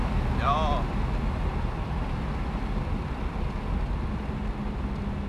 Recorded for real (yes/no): yes